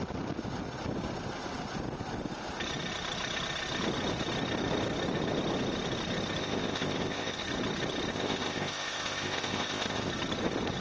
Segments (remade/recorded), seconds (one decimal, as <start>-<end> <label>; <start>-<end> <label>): 0.0-6.4 recorded; 6.4-7.4 remade; 7.4-8.1 recorded; 8.1-10.1 remade; 10.1-10.8 recorded